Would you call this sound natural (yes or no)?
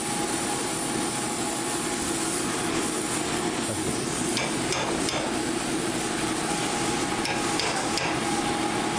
yes